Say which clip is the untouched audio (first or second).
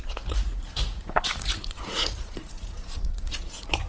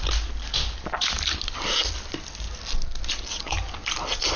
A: second